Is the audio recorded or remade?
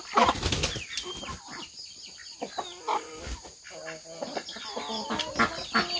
recorded